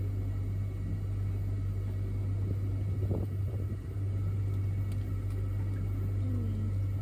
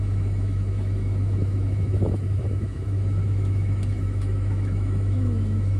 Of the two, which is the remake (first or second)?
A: second